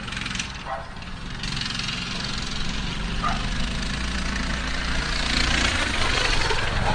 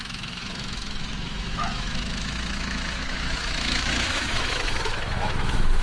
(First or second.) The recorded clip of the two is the first